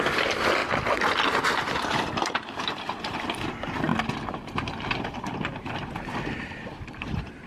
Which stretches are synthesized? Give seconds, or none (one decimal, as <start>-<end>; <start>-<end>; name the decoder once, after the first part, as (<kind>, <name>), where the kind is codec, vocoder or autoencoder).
0.0-0.6 (vocoder, BigVGAN v2); 3.0-3.9; 5.0-7.5